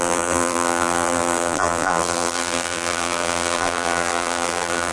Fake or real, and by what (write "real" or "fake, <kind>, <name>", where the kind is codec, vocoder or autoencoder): fake, vocoder, BigVGAN v2